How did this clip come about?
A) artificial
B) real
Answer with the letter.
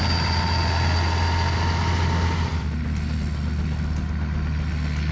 B